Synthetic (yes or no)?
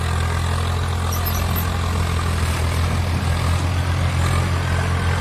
no